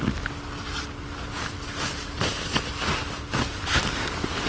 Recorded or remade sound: recorded